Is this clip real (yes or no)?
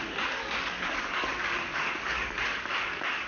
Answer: no